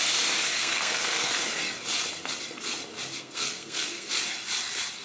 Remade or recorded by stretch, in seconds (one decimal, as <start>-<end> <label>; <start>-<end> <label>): 0.0-0.5 recorded; 0.5-1.3 remade; 1.3-3.1 recorded; 3.1-4.1 remade; 4.1-5.0 recorded